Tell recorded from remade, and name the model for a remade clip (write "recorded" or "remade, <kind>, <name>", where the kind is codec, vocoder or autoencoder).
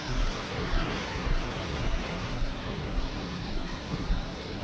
remade, codec, SNAC